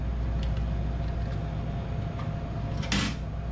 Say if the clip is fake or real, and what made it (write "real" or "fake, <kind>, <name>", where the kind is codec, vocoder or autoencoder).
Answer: real